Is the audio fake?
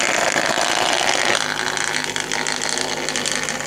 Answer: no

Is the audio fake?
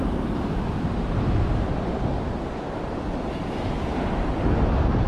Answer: no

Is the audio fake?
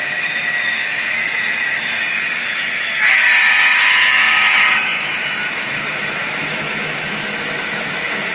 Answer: yes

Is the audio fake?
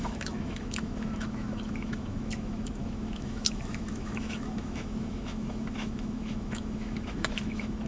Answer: yes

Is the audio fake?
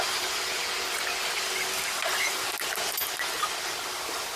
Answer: no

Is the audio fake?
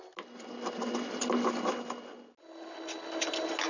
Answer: no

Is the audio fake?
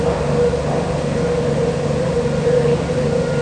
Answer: no